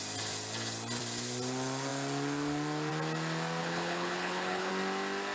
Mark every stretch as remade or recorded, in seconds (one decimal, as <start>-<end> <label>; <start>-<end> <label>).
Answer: 0.0-3.6 recorded; 3.6-4.7 remade; 4.7-5.3 recorded